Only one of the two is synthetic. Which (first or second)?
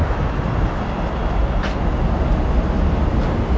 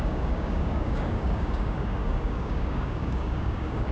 second